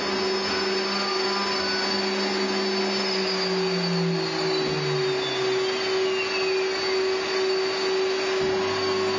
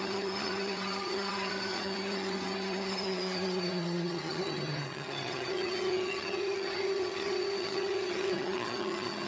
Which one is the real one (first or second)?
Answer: first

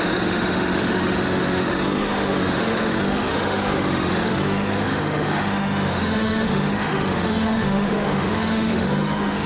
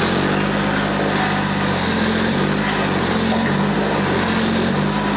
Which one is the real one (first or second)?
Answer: second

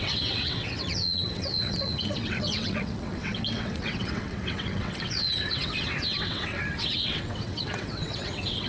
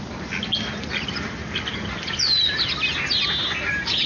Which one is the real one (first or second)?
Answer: second